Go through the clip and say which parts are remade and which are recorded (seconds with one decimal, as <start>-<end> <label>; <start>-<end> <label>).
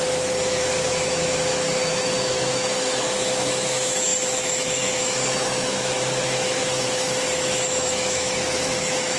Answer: 0.0-9.2 remade